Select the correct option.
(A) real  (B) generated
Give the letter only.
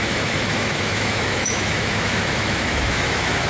B